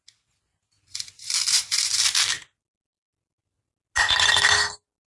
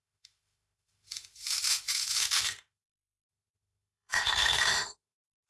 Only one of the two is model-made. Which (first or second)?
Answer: second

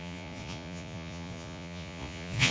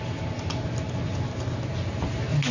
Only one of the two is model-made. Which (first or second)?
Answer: first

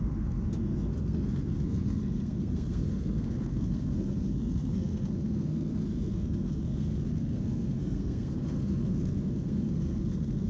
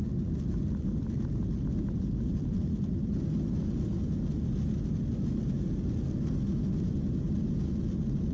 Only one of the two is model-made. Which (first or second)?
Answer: first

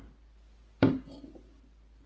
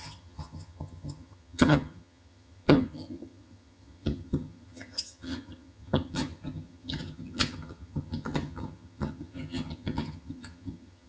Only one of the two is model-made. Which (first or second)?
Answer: second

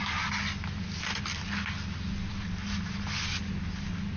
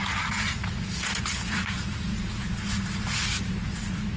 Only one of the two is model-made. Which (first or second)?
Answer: second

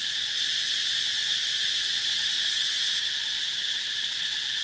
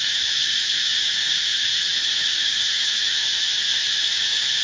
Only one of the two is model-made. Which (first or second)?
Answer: second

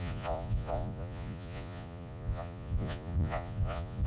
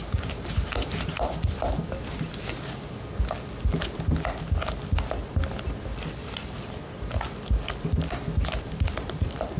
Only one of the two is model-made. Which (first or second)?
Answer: first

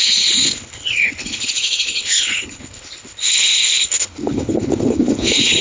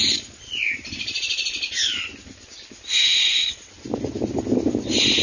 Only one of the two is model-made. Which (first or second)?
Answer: first